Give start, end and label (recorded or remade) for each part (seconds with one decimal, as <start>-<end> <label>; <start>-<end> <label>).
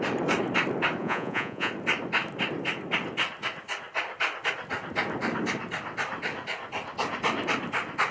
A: 0.0-1.0 recorded; 1.0-1.7 remade; 1.7-8.1 recorded